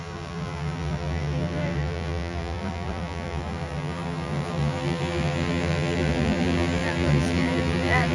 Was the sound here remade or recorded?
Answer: remade